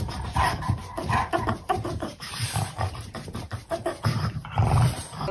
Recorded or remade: remade